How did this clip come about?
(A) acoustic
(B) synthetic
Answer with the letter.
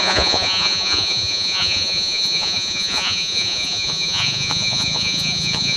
B